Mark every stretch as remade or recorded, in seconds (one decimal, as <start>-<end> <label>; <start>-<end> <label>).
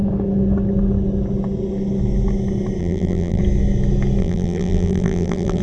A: 0.0-2.8 recorded; 2.8-3.4 remade; 3.4-4.2 recorded; 4.2-5.6 remade